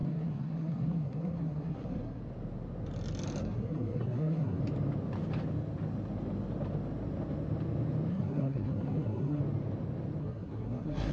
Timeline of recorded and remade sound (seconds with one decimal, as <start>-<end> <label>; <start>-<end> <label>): 0.0-2.2 remade; 2.2-3.4 recorded; 3.4-4.6 remade; 4.6-8.1 recorded; 8.1-9.4 remade; 9.4-10.2 recorded; 10.2-11.1 remade